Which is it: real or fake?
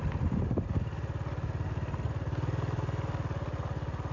real